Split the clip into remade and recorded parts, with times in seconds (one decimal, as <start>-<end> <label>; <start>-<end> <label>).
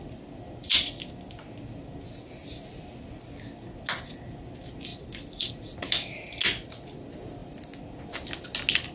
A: 0.0-4.9 recorded; 4.9-5.5 remade; 5.5-8.9 recorded